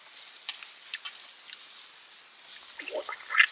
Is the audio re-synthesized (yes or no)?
no